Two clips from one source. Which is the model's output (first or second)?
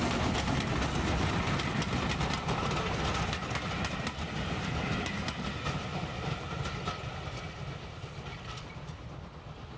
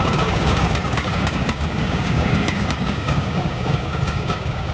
second